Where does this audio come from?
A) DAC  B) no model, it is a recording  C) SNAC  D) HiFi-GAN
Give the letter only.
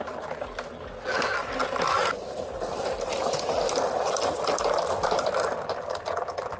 B